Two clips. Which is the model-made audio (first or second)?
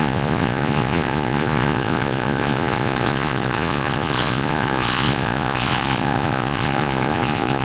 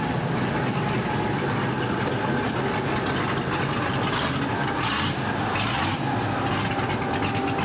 first